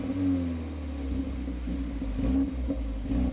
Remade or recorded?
recorded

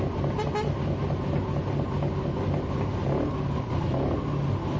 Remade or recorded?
recorded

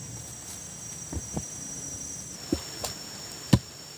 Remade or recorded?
recorded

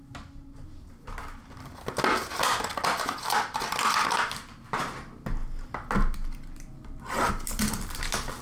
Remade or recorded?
recorded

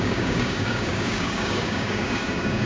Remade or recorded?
remade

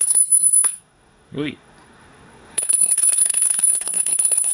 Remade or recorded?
remade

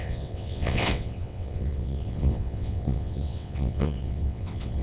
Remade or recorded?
remade